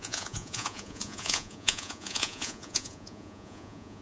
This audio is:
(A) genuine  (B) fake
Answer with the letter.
B